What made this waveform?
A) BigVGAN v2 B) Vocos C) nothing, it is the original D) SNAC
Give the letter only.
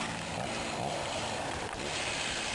C